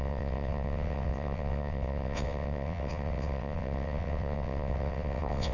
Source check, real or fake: fake